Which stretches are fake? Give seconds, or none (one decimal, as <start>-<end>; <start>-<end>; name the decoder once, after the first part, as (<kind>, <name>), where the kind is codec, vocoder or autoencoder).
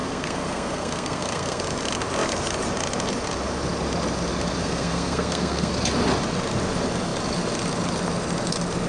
0.0-1.6 (codec, SNAC); 4.6-5.7